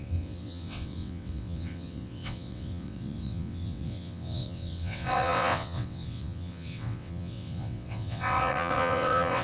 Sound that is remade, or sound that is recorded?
remade